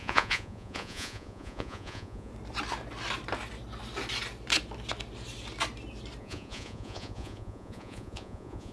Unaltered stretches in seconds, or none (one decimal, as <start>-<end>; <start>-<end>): 2.3-6.2

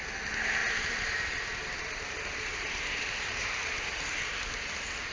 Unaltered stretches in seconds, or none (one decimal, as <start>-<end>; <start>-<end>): 0.0-0.6; 3.0-3.4; 3.9-5.1

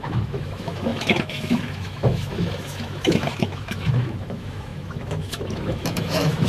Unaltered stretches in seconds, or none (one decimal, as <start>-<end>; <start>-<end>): none

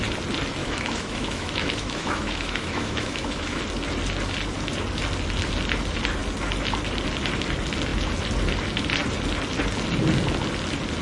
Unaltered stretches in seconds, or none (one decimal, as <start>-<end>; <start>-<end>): 0.0-0.6; 3.6-11.0